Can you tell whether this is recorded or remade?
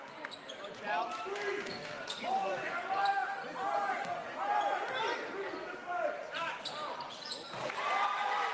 remade